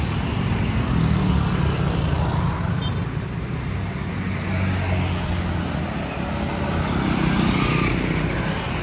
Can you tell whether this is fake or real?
real